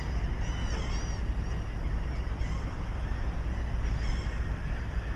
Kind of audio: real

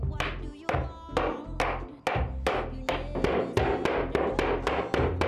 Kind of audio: real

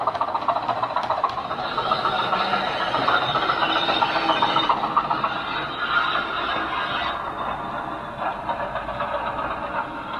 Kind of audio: real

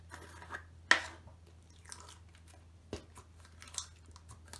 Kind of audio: real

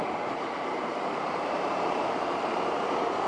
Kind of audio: fake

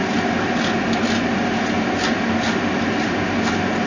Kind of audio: real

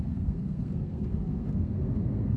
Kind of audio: fake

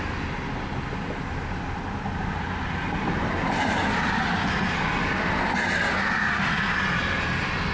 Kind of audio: real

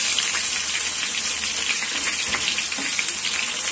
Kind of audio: real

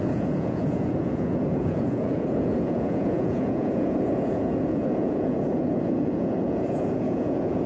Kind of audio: fake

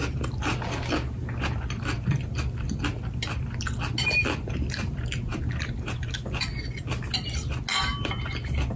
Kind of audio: real